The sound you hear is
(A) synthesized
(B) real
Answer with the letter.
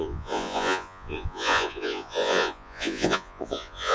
A